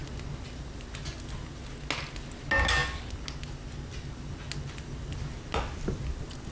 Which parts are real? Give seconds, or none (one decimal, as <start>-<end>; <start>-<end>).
0.0-6.5